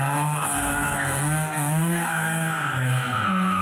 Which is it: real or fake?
fake